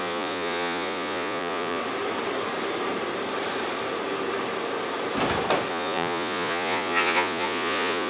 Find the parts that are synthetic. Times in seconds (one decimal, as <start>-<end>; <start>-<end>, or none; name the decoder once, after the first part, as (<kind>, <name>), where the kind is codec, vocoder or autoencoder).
0.0-1.8 (vocoder, Vocos); 5.7-8.1